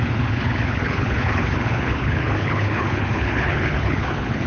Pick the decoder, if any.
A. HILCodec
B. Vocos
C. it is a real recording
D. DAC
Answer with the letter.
A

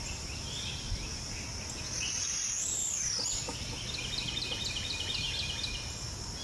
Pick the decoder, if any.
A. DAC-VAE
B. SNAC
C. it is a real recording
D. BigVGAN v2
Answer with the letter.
C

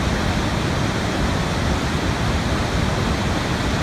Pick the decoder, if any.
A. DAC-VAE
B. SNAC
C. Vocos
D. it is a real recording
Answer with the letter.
D